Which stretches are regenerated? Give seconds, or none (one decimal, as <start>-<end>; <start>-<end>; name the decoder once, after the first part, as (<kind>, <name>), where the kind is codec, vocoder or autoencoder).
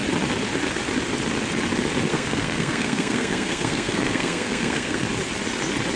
2.1-5.0 (codec, SNAC)